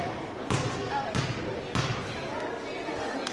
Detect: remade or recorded recorded